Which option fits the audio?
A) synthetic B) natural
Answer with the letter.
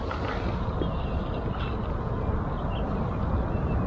B